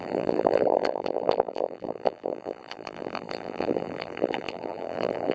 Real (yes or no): no